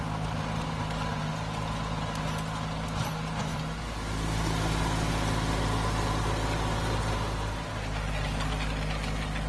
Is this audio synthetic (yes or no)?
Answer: no